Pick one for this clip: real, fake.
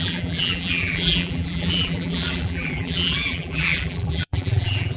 fake